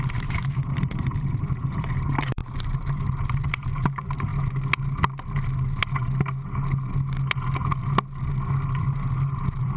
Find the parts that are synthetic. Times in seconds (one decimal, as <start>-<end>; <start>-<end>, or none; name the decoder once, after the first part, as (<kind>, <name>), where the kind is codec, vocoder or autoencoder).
0.0-4.3 (vocoder, BigVGAN v2); 8.7-9.8